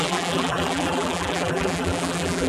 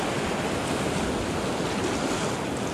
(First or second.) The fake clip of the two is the first